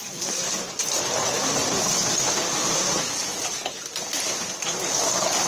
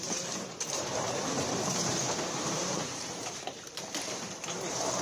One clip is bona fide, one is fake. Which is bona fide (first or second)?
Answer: first